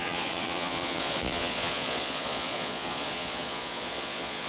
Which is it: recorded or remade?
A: remade